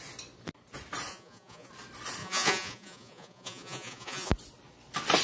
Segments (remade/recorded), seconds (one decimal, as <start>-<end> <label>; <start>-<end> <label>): 0.0-1.1 recorded; 1.1-1.7 remade; 1.7-2.2 recorded; 2.2-4.3 remade; 4.3-5.2 recorded